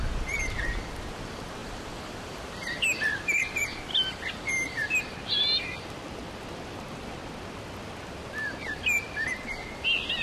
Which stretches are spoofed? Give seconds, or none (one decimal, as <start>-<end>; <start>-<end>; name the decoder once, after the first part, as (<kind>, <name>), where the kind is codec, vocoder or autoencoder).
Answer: 1.6-2.4 (vocoder, BigVGAN v2); 3.9-5.0